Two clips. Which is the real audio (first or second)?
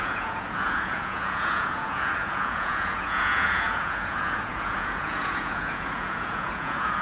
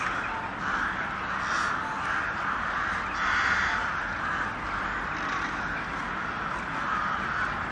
second